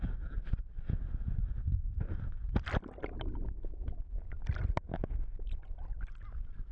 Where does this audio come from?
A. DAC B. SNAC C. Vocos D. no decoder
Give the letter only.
D